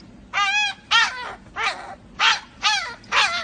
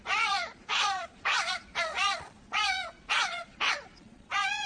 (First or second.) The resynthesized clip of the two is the second